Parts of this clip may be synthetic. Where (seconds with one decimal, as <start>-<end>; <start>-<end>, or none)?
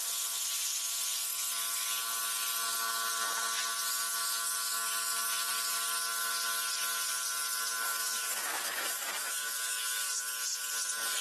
7.9-10.2